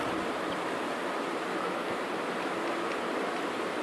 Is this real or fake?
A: real